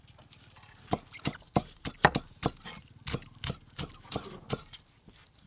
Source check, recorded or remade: recorded